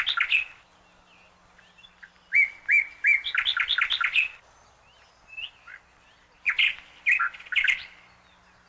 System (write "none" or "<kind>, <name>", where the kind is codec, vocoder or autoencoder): none